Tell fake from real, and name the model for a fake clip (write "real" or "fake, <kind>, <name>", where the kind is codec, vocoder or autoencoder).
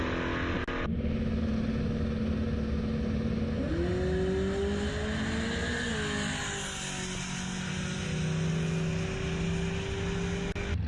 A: real